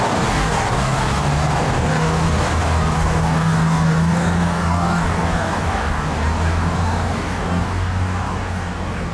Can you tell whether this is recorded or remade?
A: remade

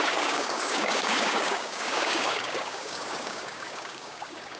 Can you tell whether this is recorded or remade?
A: remade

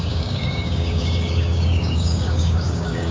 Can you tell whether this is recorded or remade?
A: remade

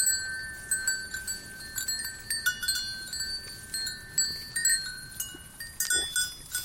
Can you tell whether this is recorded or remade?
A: recorded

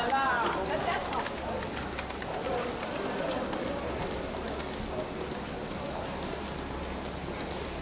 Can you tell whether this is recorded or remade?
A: recorded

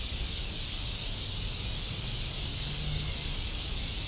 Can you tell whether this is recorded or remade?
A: remade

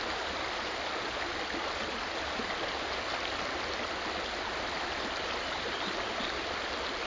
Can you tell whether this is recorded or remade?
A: recorded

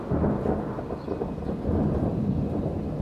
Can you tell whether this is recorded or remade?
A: recorded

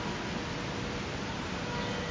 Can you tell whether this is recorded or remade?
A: recorded